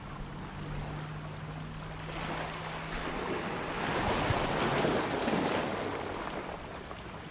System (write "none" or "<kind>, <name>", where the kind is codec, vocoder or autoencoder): none